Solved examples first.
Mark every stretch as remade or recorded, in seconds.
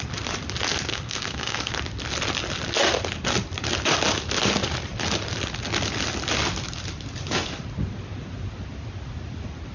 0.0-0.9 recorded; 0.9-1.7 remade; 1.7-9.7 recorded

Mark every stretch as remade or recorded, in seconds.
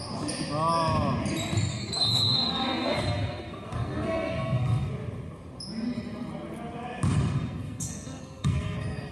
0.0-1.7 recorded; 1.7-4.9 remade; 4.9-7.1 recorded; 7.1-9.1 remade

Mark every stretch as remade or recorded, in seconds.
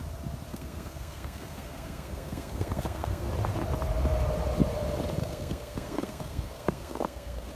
0.0-0.5 recorded; 0.5-3.3 remade; 3.3-5.2 recorded; 5.2-7.5 remade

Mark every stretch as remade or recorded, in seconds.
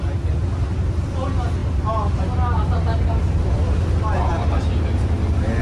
0.0-5.6 recorded